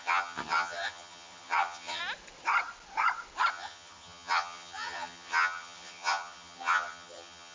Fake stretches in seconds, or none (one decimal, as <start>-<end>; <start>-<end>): 0.0-2.0; 3.5-7.5